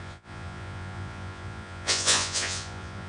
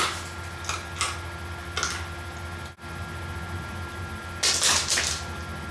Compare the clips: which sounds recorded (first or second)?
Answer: second